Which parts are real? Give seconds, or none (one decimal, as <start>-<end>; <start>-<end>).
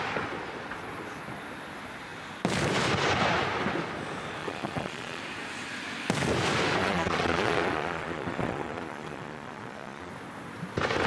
0.0-4.4; 5.2-6.8; 10.1-11.1